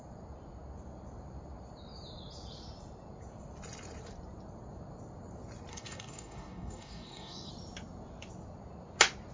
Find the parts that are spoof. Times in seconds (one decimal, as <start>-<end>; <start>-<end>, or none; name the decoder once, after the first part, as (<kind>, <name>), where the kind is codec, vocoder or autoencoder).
5.7-7.5 (codec, DAC)